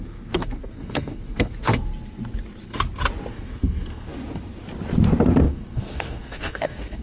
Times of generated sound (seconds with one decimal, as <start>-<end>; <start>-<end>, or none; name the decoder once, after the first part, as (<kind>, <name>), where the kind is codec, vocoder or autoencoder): 0.0-1.9 (codec, SNAC); 3.3-4.1; 5.4-7.0

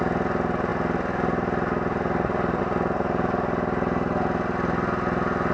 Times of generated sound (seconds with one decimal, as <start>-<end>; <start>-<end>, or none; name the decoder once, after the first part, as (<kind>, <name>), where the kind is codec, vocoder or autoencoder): none

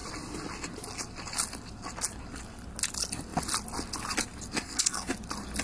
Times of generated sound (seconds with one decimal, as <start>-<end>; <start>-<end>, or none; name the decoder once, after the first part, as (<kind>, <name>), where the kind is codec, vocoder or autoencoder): 4.6-5.1 (codec, SNAC)

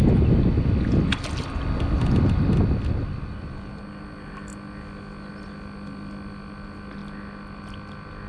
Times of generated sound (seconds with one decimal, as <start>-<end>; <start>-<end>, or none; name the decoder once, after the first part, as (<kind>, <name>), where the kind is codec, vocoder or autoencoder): none

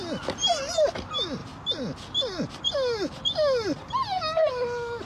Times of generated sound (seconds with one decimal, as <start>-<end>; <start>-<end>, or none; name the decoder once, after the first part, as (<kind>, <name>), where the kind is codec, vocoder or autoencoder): none

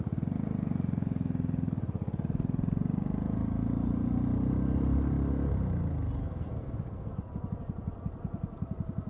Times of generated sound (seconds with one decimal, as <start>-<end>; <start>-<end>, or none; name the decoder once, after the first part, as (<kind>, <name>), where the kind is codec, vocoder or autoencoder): 6.2-7.1 (codec, SNAC)

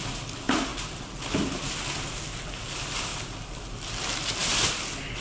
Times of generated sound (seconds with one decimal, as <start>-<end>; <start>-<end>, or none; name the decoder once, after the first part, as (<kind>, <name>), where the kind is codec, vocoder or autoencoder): none

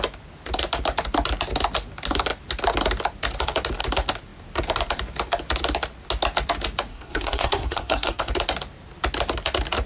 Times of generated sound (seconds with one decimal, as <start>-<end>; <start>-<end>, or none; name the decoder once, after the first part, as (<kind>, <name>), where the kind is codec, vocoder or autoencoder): 6.9-8.3 (codec, SNAC)